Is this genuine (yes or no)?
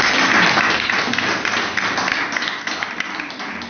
yes